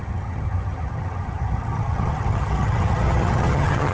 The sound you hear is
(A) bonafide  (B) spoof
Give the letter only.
B